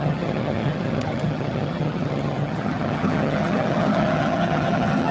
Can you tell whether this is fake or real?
fake